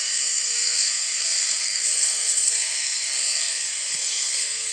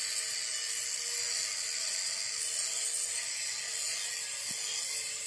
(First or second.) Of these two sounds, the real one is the second